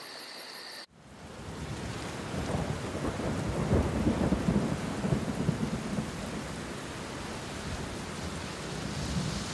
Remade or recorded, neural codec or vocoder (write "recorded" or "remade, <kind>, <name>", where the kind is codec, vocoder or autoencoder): recorded